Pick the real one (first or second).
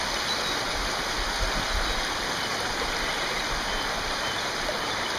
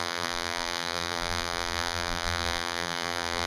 first